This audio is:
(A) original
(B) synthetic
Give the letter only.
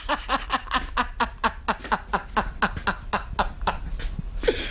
A